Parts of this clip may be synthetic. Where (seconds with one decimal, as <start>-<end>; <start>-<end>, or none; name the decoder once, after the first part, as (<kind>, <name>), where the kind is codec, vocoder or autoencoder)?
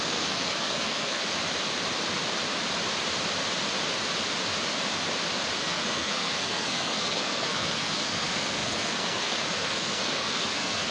0.0-1.2 (codec, SNAC); 5.6-10.9